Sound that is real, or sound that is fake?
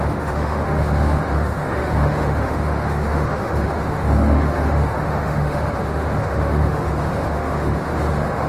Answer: fake